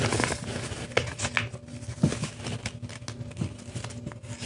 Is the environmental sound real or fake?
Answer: real